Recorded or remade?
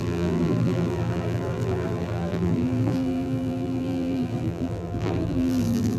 remade